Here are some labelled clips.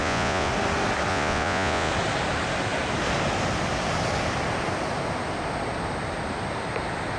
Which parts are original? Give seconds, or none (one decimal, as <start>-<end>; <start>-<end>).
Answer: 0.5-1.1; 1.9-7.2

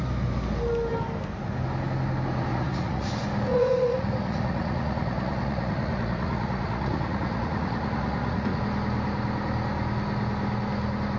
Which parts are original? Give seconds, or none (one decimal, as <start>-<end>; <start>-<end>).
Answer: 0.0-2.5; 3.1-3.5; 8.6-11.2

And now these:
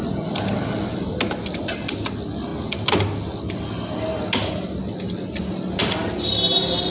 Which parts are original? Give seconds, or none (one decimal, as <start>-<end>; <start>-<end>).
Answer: 0.0-6.9

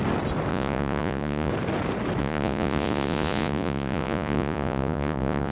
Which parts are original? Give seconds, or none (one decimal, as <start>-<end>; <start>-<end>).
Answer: 0.0-0.5; 1.5-2.2

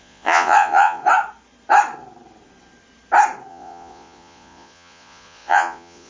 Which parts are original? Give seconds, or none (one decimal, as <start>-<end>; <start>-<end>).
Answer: 1.0-3.5

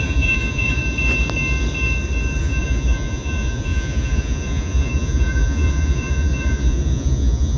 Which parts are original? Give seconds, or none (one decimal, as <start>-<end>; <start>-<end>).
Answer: 0.8-2.4